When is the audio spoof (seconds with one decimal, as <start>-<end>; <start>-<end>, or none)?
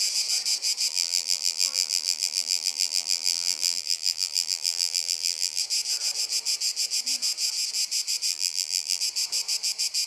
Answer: 0.9-5.6; 8.3-9.0